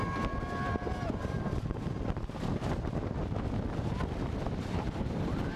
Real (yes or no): yes